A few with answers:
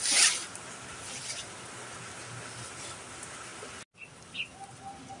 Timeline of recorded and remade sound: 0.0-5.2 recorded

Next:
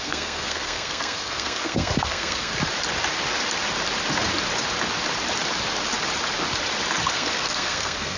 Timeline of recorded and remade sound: 0.0-2.5 remade; 2.5-7.1 recorded; 7.1-8.2 remade

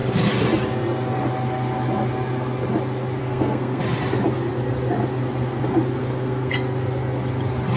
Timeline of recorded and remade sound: 0.0-3.2 recorded; 3.2-3.8 remade; 3.8-6.0 recorded; 6.0-6.5 remade; 6.5-7.8 recorded

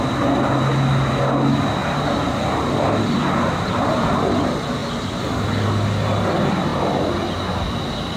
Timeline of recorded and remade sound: 0.0-8.2 recorded

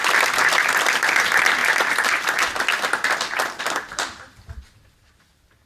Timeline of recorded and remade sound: 0.0-5.7 recorded

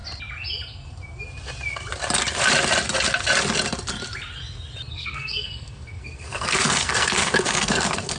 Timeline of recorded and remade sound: 0.0-4.9 recorded; 4.9-8.2 remade